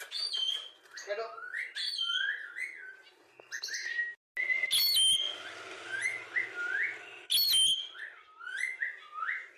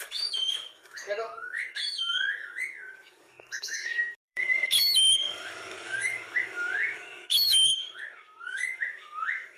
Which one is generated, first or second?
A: second